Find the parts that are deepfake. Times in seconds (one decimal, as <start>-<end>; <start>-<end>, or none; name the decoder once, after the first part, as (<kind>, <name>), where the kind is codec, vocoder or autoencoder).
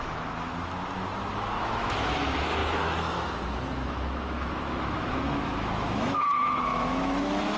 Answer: 0.0-0.5 (autoencoder, DAC-VAE); 1.3-7.6